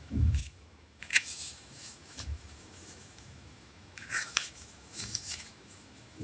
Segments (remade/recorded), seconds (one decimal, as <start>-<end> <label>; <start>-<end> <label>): 0.0-6.2 remade

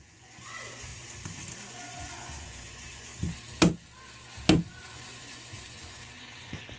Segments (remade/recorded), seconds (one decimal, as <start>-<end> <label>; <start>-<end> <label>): 0.0-0.9 remade; 0.9-1.7 recorded; 1.7-3.1 remade; 3.1-4.9 recorded; 4.9-6.8 remade